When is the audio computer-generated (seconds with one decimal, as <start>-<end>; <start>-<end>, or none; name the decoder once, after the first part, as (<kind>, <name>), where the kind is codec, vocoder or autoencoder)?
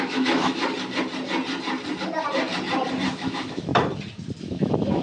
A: 0.0-0.6 (autoencoder, DAC-VAE); 3.1-3.7; 4.4-5.0